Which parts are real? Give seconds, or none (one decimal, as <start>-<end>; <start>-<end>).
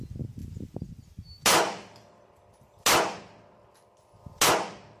0.0-0.4; 0.9-5.0